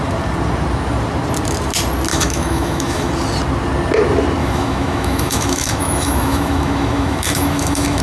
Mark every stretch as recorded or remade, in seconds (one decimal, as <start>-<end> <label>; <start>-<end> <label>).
0.0-2.1 recorded; 2.1-3.1 remade; 3.1-4.4 recorded; 4.4-8.0 remade